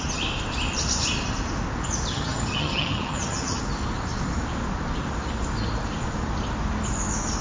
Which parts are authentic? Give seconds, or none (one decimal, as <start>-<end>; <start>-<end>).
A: 0.0-2.1; 3.6-7.4